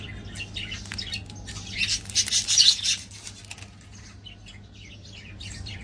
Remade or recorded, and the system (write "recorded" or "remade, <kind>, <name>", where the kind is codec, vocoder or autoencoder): recorded